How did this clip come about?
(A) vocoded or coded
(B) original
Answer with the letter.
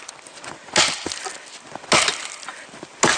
B